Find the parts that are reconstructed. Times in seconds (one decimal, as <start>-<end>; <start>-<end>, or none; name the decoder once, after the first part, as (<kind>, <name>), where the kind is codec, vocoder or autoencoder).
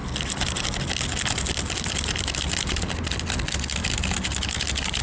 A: none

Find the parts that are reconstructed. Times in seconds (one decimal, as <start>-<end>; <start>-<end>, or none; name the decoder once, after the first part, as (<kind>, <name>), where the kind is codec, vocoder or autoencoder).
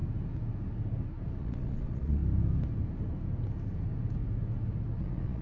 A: 1.4-2.2 (vocoder, Vocos); 5.0-5.4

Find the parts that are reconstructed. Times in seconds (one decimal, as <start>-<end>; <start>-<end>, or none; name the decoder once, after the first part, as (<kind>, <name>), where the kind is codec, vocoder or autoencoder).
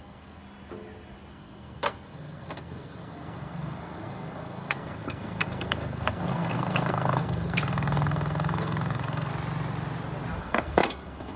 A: 0.0-0.4 (codec, SNAC); 1.3-9.3; 10.4-11.4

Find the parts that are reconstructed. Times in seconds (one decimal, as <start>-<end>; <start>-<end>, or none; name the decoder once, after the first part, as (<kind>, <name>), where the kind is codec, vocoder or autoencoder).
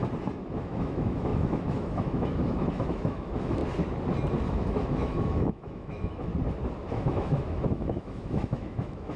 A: 0.6-3.6 (autoencoder, DAC-VAE); 4.5-6.3; 6.9-9.2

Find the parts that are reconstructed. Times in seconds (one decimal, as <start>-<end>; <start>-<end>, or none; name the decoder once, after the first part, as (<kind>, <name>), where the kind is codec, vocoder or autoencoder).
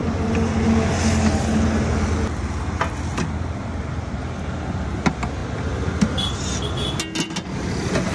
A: none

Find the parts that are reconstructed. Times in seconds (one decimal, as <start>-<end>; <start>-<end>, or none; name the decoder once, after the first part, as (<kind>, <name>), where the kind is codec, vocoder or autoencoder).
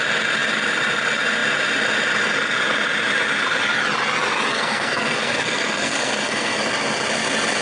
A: 4.5-6.6 (codec, SNAC)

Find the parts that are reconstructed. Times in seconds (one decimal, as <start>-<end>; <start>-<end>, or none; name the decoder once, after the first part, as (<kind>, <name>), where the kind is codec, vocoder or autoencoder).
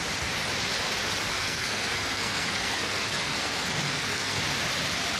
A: 1.3-4.4 (codec, SNAC)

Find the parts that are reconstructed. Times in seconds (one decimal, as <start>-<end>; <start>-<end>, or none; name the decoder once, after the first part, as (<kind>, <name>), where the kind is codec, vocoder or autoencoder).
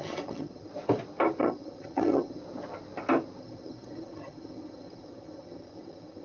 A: 0.0-0.7 (vocoder, HiFi-GAN); 1.4-2.4; 3.4-6.2